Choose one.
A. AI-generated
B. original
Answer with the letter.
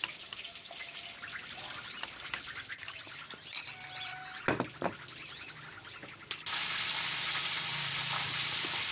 A